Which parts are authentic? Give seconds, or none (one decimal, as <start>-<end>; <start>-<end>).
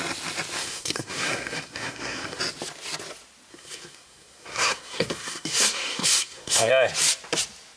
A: 0.0-0.6; 2.4-3.5; 6.7-7.8